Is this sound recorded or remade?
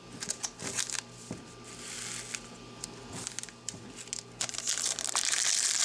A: recorded